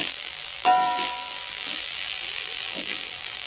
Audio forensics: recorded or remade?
remade